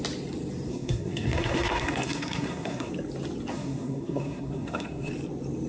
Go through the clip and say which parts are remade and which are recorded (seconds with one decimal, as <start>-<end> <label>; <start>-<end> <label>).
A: 0.0-0.7 recorded; 0.7-2.9 remade; 2.9-3.5 recorded; 3.5-5.1 remade; 5.1-5.7 recorded